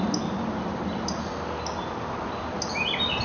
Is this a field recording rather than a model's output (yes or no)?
yes